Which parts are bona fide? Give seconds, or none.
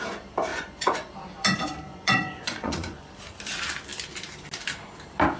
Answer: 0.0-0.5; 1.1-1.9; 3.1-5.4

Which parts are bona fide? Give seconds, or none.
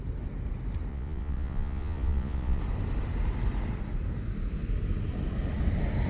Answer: 0.0-0.9; 2.6-6.1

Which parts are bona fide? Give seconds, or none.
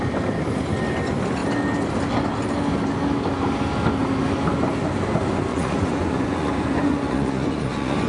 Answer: 0.0-5.5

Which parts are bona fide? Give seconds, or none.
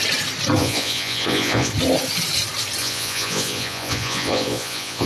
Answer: 0.0-0.6; 1.7-2.8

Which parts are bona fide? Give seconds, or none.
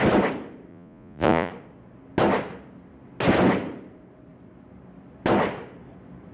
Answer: 0.0-0.7; 1.5-6.3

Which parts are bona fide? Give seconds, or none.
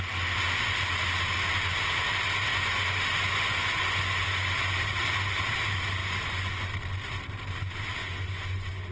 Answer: 0.0-2.5; 4.6-6.0; 6.7-8.0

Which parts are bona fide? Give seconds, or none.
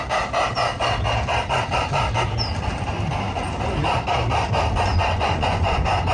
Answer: 0.0-4.9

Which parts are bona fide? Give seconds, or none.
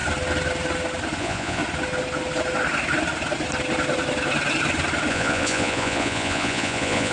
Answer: 0.0-1.2; 1.6-5.1